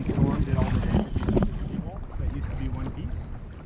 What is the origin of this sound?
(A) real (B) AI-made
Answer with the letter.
A